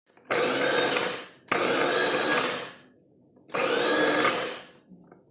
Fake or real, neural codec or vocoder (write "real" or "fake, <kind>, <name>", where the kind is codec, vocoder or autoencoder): real